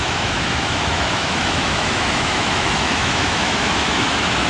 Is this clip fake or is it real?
fake